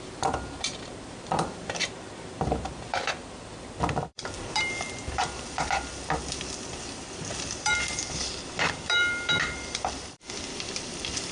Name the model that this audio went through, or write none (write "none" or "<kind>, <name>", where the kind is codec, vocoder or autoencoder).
vocoder, BigVGAN v2